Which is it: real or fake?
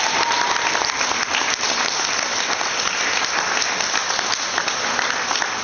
real